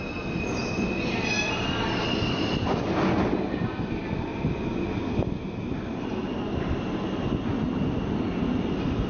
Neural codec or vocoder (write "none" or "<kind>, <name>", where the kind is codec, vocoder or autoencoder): none